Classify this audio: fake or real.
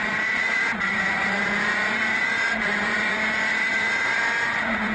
fake